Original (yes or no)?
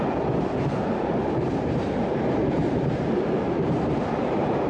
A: no